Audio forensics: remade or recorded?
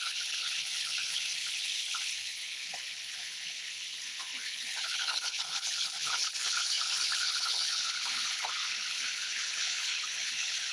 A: remade